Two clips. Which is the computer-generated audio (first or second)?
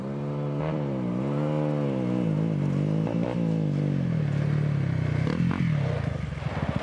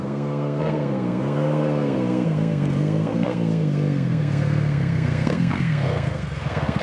second